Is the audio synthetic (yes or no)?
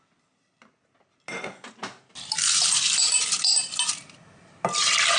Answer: no